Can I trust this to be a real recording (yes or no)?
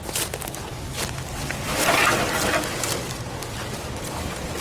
yes